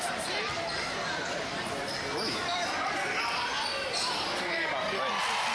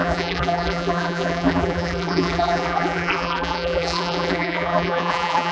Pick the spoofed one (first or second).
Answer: second